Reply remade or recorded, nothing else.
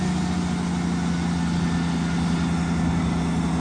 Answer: recorded